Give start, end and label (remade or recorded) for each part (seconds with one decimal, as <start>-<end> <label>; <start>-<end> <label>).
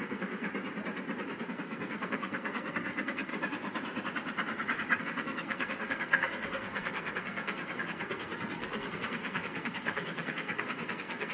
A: 0.0-0.5 remade; 0.5-1.5 recorded; 1.5-3.3 remade; 3.3-5.0 recorded; 5.0-11.3 remade